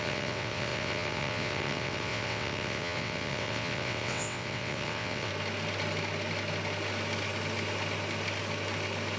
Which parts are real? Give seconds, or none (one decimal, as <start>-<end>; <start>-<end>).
5.3-9.2